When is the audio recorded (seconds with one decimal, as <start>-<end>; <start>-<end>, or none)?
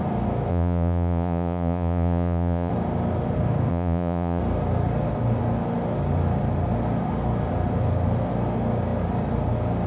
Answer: 0.0-0.5; 2.7-3.7; 4.4-9.9